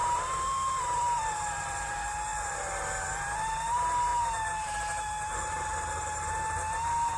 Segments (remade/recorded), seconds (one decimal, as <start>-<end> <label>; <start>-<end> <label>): 0.0-4.1 remade; 4.1-7.2 recorded

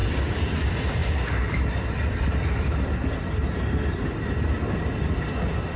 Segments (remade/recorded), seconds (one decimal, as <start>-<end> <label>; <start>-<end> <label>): 0.0-1.0 recorded; 1.0-4.0 remade; 4.0-5.8 recorded

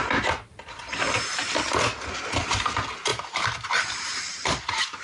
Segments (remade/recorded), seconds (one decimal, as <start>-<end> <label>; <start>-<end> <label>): 0.0-3.1 recorded; 3.1-5.0 remade

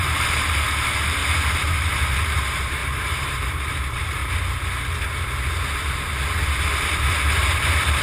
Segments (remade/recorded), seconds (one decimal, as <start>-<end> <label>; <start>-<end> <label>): 0.0-1.2 remade; 1.2-2.1 recorded; 2.1-4.2 remade; 4.2-7.1 recorded; 7.1-8.0 remade

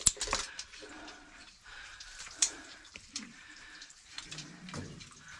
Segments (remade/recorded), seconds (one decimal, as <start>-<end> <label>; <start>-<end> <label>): 0.0-1.4 recorded; 1.4-4.6 remade; 4.6-5.4 recorded

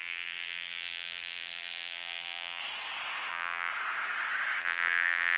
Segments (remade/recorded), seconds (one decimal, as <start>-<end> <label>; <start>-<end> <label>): 0.0-2.6 remade; 2.6-3.3 recorded; 3.3-3.7 remade; 3.7-4.6 recorded; 4.6-5.4 remade